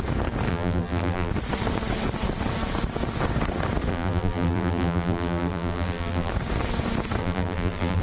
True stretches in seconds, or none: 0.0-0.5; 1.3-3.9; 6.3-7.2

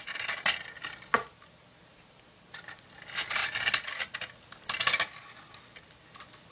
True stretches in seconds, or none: 0.0-1.9; 2.8-6.5

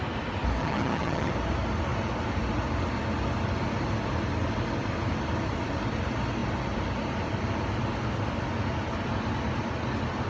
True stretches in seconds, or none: 0.0-0.6; 1.3-10.3

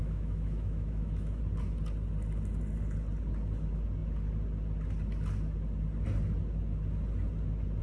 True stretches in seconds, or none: 1.4-7.8

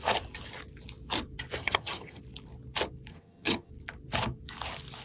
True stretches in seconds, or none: 0.0-1.6; 2.2-3.1; 3.7-5.0

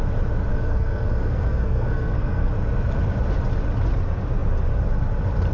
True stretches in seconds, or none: 0.0-0.5; 2.5-5.5

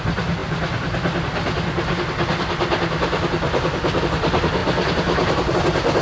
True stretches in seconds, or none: 0.0-6.0